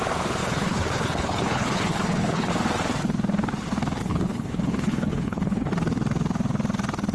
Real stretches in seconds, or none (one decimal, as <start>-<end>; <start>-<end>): 0.0-0.4; 2.5-4.0; 5.7-7.1

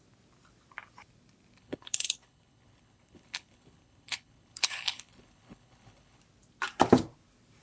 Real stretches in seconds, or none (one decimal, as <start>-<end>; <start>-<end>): 0.0-1.6; 6.2-7.6

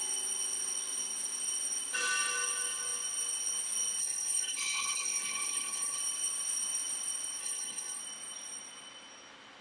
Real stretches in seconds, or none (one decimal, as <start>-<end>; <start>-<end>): 0.0-4.0; 6.0-7.4; 8.0-9.6

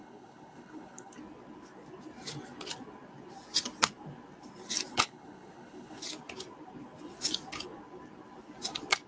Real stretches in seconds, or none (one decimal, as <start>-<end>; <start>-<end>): 1.1-4.9; 6.0-9.1

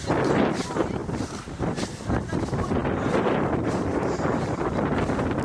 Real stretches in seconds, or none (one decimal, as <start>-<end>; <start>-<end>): 0.0-5.4

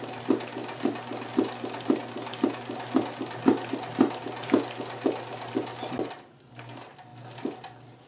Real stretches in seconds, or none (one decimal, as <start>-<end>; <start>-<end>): 0.0-8.1

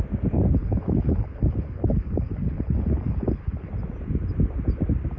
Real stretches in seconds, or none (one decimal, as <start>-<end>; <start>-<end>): 0.0-0.6; 3.7-5.2

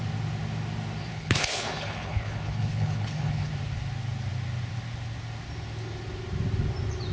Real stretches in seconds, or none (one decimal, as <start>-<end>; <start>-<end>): 0.0-1.1; 3.5-7.1